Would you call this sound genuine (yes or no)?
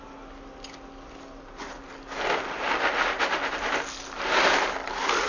yes